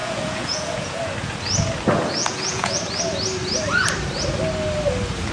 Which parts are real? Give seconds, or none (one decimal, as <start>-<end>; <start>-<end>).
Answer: 1.0-2.2; 2.8-5.3